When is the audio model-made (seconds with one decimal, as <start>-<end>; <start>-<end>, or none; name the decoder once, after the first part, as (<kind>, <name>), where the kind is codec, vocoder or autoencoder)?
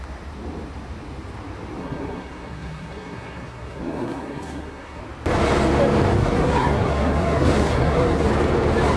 1.8-5.0 (codec, SNAC); 6.2-8.3